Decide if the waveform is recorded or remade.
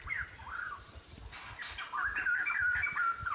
recorded